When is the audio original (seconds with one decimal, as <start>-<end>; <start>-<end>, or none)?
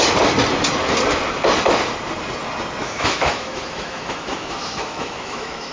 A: 0.0-2.8